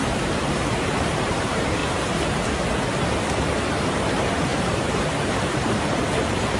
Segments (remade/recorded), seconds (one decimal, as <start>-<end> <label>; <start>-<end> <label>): 0.0-1.8 remade; 1.8-3.7 recorded; 3.7-6.6 remade